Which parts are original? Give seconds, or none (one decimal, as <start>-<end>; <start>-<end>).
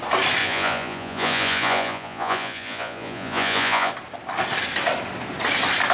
0.0-0.4; 3.9-5.9